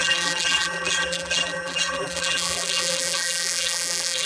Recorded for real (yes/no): no